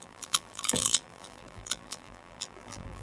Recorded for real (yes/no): no